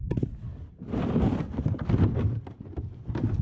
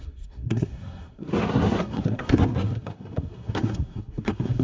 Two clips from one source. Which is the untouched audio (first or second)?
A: first